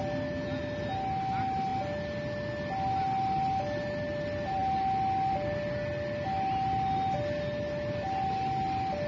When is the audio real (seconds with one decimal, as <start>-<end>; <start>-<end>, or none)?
0.0-9.1